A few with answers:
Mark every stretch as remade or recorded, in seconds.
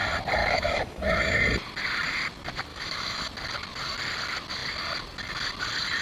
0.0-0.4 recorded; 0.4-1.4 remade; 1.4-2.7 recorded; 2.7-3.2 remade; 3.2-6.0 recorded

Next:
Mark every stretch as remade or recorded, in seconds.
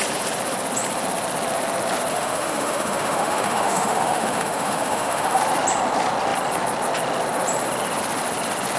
0.0-2.1 recorded; 2.1-5.4 remade; 5.4-8.8 recorded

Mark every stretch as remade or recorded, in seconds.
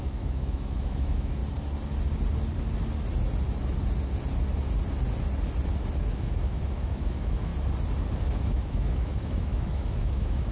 0.0-1.4 remade; 1.4-6.0 recorded; 6.0-7.5 remade; 7.5-8.2 recorded; 8.2-10.5 remade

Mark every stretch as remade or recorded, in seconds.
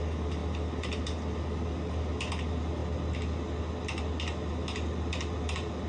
0.0-5.9 recorded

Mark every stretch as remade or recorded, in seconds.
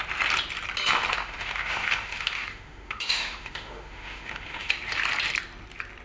0.0-1.1 recorded; 1.1-4.7 remade; 4.7-6.0 recorded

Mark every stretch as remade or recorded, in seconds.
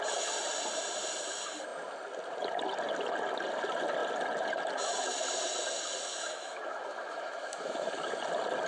0.0-6.1 recorded; 6.1-7.9 remade; 7.9-8.7 recorded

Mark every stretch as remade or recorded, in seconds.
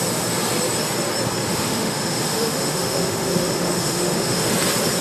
0.0-1.5 recorded; 1.5-4.5 remade; 4.5-5.0 recorded